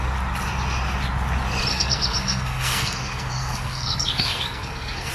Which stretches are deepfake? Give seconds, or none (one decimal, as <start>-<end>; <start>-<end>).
1.7-5.1